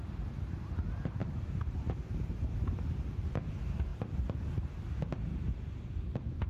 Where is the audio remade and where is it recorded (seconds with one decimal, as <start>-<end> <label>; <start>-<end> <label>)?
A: 0.0-0.7 remade; 0.7-1.2 recorded; 1.2-3.5 remade; 3.5-3.9 recorded; 3.9-4.5 remade; 4.5-5.3 recorded; 5.3-6.5 remade

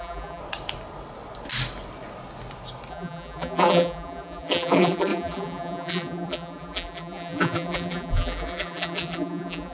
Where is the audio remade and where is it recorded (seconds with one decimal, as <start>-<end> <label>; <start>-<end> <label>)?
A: 0.0-0.4 remade; 0.4-2.9 recorded; 2.9-9.7 remade

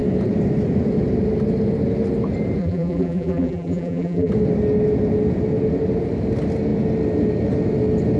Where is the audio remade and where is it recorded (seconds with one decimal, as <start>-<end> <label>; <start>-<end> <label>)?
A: 0.0-2.6 recorded; 2.6-4.3 remade; 4.3-8.2 recorded

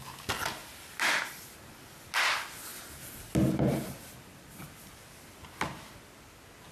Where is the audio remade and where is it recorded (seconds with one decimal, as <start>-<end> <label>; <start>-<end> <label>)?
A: 0.0-0.6 recorded; 0.6-1.2 remade; 1.2-6.7 recorded

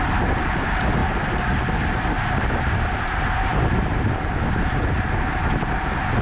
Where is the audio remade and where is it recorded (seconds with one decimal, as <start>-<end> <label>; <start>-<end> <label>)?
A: 0.0-1.0 recorded; 1.0-2.4 remade; 2.4-3.5 recorded; 3.5-4.8 remade; 4.8-6.2 recorded

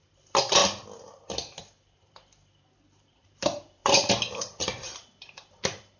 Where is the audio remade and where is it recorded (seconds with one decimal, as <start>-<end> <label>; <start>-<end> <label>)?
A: 0.0-0.6 remade; 0.6-1.6 recorded; 1.6-3.8 remade; 3.8-4.4 recorded; 4.4-6.0 remade